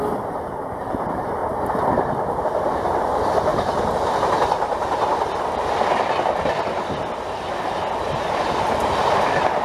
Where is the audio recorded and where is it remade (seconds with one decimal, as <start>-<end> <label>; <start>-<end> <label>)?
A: 0.0-1.4 remade; 1.4-2.4 recorded; 2.4-3.5 remade; 3.5-7.9 recorded; 7.9-9.6 remade